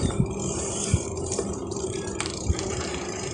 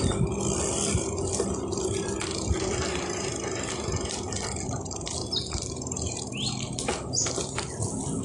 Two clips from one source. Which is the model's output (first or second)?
first